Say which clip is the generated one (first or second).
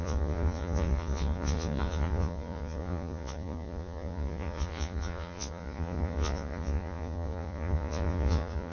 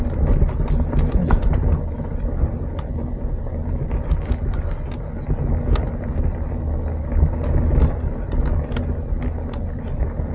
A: first